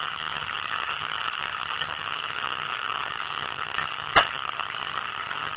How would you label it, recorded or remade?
remade